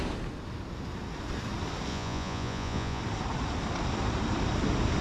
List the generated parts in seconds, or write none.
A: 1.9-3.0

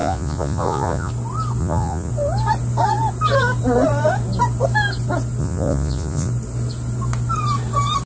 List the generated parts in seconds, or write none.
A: 0.0-1.1; 1.6-2.1; 5.4-6.3